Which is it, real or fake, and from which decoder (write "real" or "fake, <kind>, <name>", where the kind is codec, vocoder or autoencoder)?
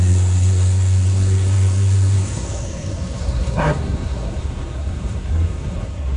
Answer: fake, codec, SNAC